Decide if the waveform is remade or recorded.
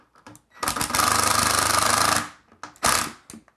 recorded